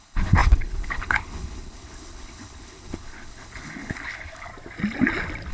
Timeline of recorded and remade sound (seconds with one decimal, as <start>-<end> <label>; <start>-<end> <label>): 0.0-4.5 remade; 4.5-5.5 recorded